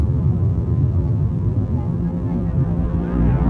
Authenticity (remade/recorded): remade